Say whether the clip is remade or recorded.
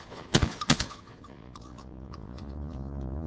remade